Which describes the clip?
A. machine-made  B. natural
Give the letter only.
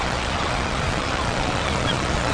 A